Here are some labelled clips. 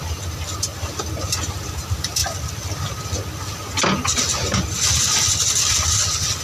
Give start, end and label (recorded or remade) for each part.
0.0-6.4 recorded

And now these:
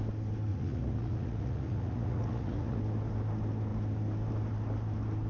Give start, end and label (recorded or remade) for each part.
0.0-0.5 recorded; 0.5-2.8 remade; 2.8-5.3 recorded

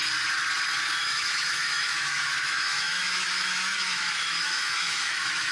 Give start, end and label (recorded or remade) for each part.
0.0-1.0 recorded; 1.0-5.5 remade

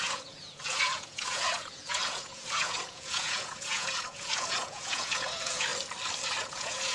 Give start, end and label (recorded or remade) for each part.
0.0-5.7 remade; 5.7-6.4 recorded; 6.4-6.9 remade

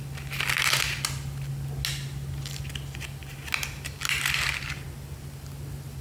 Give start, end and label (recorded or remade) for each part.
0.0-6.0 recorded

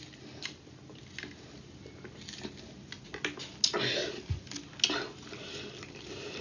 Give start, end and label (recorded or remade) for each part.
0.0-6.4 recorded

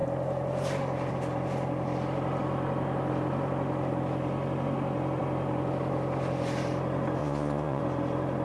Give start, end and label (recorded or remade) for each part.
0.0-7.2 recorded; 7.2-7.8 remade; 7.8-8.4 recorded